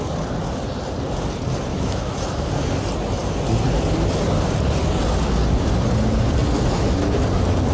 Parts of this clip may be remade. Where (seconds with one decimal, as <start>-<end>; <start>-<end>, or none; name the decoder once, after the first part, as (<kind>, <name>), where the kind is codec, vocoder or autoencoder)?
1.7-2.5 (autoencoder, DAC-VAE)